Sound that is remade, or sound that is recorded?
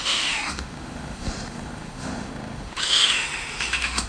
remade